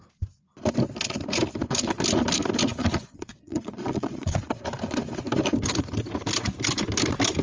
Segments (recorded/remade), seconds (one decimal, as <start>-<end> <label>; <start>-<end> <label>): 0.0-2.8 recorded; 2.8-4.4 remade; 4.4-7.4 recorded